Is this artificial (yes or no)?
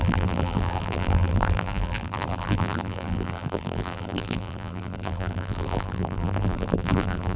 yes